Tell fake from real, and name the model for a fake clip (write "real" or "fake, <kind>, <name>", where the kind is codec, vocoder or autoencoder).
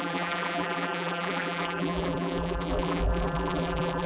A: fake, vocoder, BigVGAN v2